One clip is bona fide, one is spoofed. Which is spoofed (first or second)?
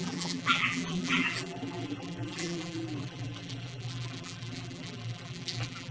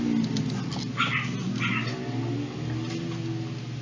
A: first